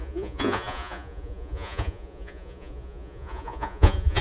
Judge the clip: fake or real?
fake